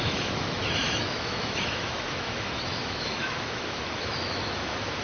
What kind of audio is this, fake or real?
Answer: fake